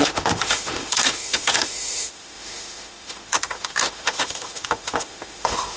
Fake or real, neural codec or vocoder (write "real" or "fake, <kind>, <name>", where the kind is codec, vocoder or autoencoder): fake, autoencoder, DAC-VAE